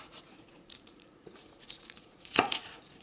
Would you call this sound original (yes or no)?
no